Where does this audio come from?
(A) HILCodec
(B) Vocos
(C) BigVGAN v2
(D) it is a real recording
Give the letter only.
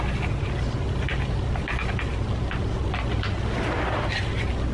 D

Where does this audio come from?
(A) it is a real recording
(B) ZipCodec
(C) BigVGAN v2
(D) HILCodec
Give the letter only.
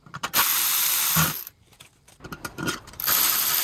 C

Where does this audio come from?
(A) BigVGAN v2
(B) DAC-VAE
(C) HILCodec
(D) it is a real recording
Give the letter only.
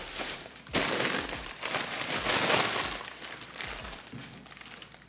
A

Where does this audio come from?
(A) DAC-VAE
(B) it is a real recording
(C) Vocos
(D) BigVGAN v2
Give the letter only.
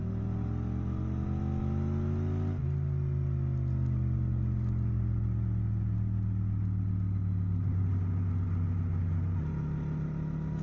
B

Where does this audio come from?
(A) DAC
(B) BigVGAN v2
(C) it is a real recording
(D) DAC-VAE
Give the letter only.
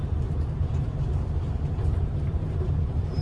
B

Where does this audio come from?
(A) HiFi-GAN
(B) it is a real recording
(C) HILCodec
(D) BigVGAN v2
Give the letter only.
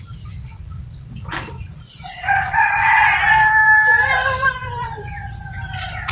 D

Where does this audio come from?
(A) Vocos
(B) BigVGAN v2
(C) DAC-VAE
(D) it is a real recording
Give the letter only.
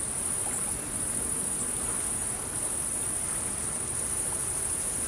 D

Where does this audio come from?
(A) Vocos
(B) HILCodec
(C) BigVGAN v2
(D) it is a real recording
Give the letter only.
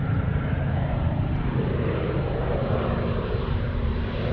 C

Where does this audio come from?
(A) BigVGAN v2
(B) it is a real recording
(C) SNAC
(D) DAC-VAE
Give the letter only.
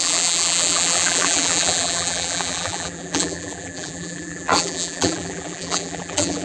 A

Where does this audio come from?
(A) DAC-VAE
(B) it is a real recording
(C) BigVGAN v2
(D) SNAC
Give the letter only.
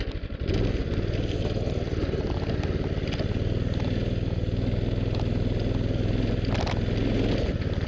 B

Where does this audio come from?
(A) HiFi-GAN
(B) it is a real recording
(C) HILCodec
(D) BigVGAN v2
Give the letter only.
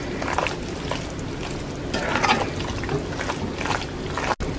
B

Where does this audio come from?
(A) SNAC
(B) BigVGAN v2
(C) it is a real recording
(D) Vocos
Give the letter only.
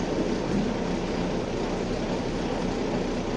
C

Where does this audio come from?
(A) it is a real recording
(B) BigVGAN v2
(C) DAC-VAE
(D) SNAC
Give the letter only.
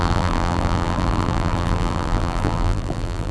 B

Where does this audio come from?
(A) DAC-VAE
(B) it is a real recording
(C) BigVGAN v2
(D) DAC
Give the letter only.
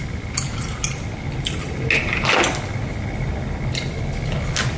B